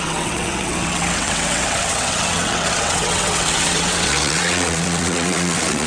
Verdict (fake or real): fake